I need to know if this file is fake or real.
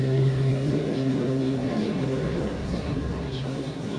fake